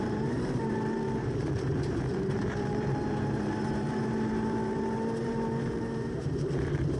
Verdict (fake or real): fake